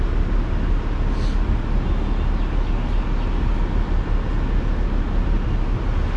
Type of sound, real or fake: real